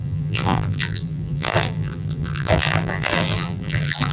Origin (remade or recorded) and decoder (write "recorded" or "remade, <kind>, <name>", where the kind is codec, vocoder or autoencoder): remade, vocoder, BigVGAN v2